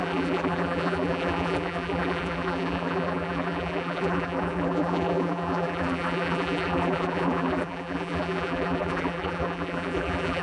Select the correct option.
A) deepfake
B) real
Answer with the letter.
A